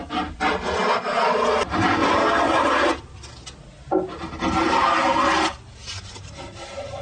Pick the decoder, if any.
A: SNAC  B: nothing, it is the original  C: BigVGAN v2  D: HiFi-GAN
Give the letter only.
B